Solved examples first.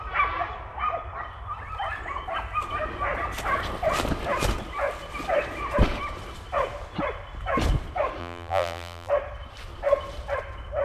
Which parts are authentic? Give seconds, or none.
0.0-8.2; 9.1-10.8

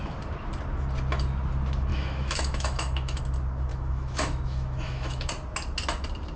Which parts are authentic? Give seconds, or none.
0.0-1.9; 3.2-3.7; 5.3-6.4

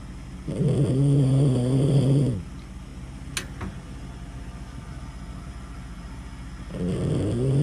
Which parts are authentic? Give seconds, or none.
0.0-7.6

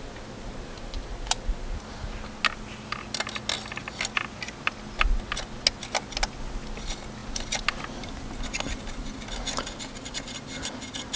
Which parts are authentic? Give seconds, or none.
0.0-11.2